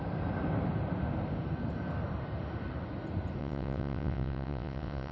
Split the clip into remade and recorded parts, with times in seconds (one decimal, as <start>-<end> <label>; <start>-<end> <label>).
0.0-3.4 recorded; 3.4-5.1 remade